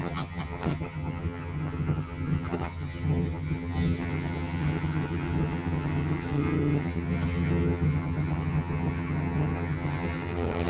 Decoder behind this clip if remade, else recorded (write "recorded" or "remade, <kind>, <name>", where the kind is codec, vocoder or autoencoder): remade, vocoder, HiFi-GAN